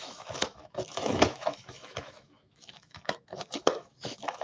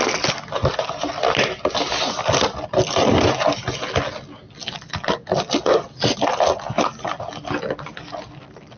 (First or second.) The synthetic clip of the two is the first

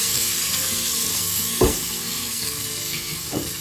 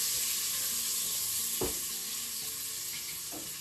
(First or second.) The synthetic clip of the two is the first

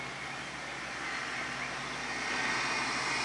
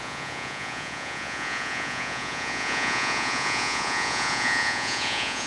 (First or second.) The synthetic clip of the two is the second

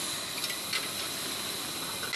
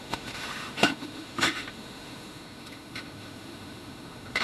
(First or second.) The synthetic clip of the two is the second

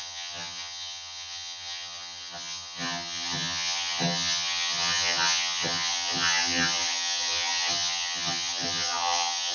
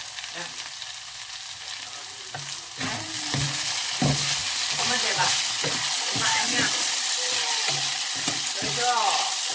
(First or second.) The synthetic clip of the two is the first